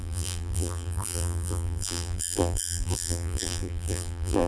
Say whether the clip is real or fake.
fake